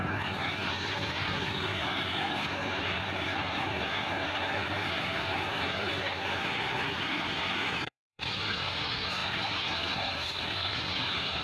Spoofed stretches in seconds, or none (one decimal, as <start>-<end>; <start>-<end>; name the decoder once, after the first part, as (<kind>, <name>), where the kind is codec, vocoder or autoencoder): 0.0-11.4 (codec, SNAC)